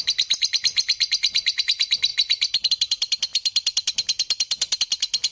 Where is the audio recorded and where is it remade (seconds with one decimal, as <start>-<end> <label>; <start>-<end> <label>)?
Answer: 0.0-5.3 recorded